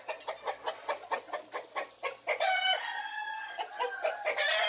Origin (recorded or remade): recorded